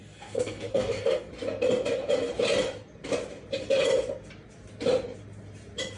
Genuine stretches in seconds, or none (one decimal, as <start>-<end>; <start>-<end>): 1.3-6.0